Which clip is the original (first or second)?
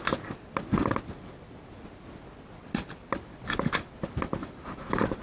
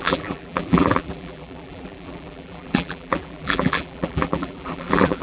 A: first